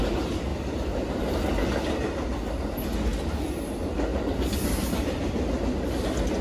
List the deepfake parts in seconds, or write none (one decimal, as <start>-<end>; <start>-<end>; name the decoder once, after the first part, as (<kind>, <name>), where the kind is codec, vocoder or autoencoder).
0.5-1.3 (vocoder, BigVGAN v2); 4.1-6.0